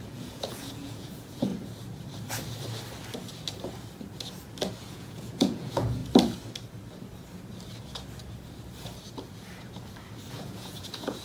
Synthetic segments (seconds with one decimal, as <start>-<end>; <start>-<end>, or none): 0.0-1.5; 4.8-6.0; 10.3-11.2

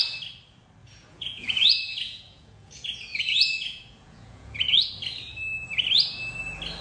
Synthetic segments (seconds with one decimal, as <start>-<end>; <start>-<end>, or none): 0.8-4.9

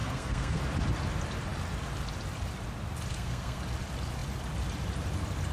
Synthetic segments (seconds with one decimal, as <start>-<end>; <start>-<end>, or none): 0.0-0.6; 3.1-3.6

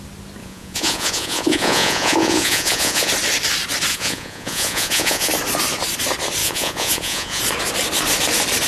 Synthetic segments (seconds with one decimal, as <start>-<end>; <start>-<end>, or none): 0.4-3.1; 3.9-5.3; 6.4-7.4

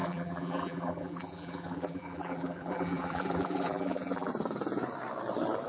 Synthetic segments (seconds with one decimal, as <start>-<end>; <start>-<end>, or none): 0.0-4.3

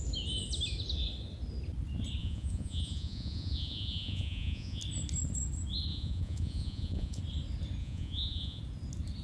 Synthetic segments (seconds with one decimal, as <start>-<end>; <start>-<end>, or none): 2.2-4.8; 5.9-7.2; 7.8-8.6

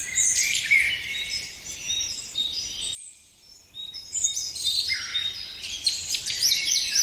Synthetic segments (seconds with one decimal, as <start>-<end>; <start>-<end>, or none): 0.0-5.1; 6.2-7.0

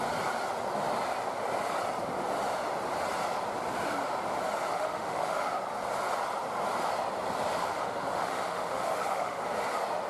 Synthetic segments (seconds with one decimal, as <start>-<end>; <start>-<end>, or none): 4.7-5.5; 7.6-9.4